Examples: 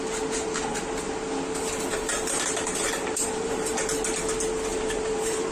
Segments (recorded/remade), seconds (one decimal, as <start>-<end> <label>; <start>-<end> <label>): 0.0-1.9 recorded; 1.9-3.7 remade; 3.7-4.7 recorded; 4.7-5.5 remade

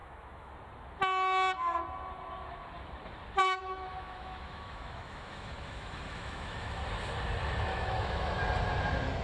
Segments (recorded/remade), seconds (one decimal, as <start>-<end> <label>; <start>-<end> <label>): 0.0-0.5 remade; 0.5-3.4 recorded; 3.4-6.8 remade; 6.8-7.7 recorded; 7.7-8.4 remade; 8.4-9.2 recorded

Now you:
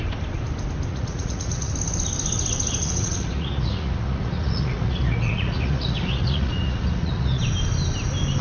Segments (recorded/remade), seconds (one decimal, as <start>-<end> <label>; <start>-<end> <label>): 0.0-0.9 recorded; 0.9-1.7 remade; 1.7-2.8 recorded; 2.8-7.4 remade; 7.4-8.4 recorded

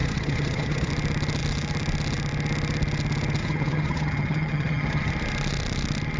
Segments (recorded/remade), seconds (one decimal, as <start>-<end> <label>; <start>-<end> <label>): 0.0-0.9 remade; 0.9-3.4 recorded; 3.4-5.1 remade; 5.1-6.2 recorded

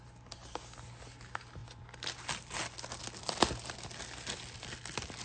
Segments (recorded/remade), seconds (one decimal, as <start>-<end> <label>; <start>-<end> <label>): 0.0-5.2 recorded